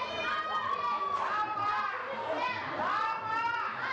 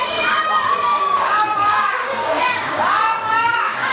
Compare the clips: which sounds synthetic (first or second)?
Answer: second